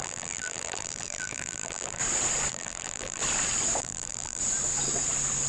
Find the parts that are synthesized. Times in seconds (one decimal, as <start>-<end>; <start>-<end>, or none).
0.0-2.0; 2.5-3.2; 3.8-4.4